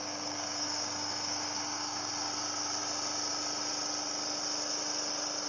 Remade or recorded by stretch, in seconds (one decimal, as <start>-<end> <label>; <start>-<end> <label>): 0.0-2.1 remade; 2.1-5.5 recorded